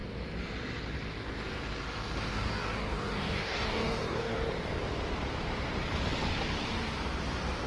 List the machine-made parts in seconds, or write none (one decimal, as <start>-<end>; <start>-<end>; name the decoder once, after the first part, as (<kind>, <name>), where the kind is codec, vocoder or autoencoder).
2.3-4.4 (codec, DAC)